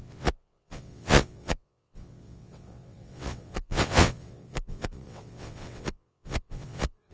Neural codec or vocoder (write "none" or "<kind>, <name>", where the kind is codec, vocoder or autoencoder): vocoder, WaveNeXt